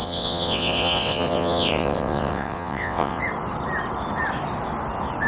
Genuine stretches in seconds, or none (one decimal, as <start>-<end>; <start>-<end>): 3.2-5.3